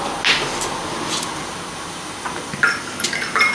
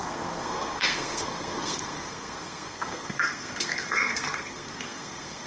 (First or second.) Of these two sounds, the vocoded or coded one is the second